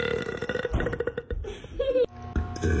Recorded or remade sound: recorded